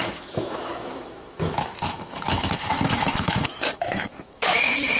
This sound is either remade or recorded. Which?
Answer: remade